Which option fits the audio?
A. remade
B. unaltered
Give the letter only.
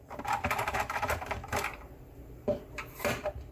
A